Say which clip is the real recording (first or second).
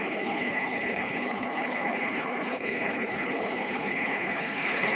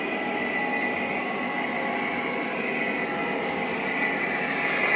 second